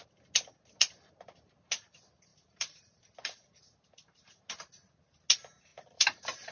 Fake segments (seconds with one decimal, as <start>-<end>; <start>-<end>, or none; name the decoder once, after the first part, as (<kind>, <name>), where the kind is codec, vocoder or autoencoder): 2.3-3.0 (vocoder, BigVGAN v2); 5.7-6.5